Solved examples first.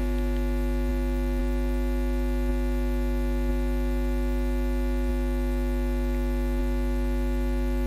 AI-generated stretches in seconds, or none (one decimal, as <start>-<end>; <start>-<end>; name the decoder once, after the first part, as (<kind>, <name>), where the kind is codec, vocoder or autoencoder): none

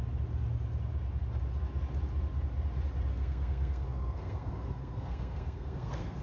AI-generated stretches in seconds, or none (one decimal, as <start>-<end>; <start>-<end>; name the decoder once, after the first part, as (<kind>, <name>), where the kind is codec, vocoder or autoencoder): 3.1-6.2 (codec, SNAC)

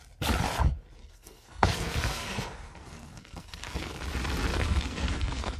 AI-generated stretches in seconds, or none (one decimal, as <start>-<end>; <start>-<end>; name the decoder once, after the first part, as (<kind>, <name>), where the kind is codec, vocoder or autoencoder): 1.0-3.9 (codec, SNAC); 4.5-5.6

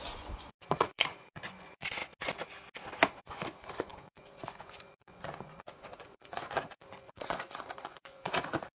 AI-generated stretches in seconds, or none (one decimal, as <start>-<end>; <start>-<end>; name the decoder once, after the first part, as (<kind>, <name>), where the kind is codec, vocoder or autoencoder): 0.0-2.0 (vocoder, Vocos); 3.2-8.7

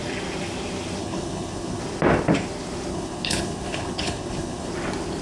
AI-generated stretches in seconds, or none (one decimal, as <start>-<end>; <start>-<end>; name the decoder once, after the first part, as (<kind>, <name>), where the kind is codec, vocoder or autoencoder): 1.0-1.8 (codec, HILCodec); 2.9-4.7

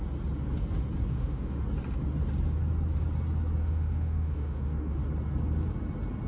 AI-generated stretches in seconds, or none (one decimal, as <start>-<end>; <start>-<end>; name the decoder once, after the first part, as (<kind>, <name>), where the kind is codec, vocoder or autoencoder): 1.1-1.6 (autoencoder, DAC-VAE); 3.6-5.0

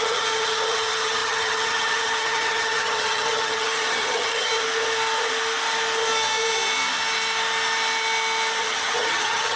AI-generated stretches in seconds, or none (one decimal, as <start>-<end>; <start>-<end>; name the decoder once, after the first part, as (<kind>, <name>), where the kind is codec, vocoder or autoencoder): 0.0-4.5 (vocoder, HiFi-GAN); 8.6-9.6

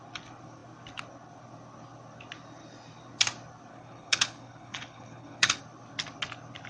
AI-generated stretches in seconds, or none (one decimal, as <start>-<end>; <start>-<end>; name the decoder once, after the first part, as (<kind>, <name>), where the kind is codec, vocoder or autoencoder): 3.7-5.6 (codec, HILCodec)